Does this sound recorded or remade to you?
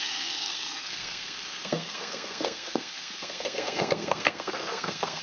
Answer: remade